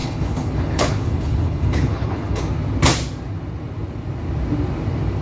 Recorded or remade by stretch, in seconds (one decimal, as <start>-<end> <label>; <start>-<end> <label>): 0.0-2.4 remade; 2.4-5.2 recorded